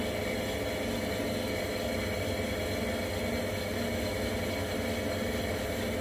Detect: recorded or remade recorded